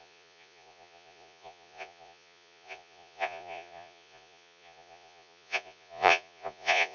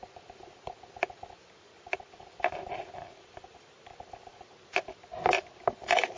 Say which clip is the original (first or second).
second